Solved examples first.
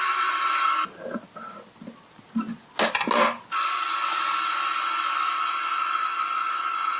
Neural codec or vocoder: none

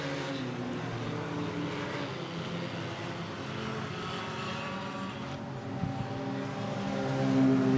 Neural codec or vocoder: none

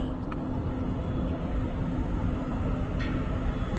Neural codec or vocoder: none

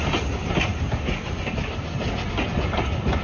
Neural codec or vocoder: none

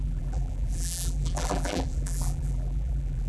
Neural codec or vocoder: vocoder, BigVGAN v2